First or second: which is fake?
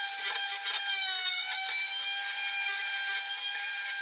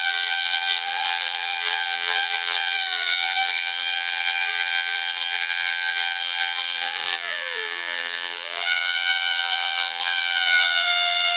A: second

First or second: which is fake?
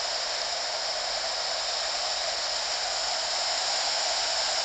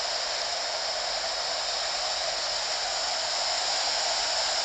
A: first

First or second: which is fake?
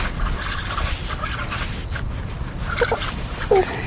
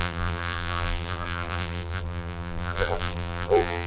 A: second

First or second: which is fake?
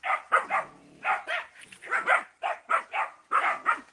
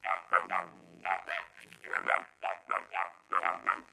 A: second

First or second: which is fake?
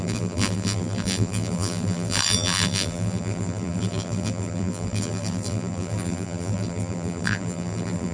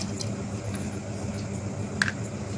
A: first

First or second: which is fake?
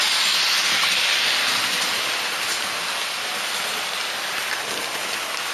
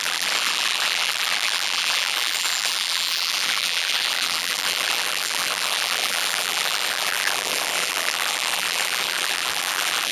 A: second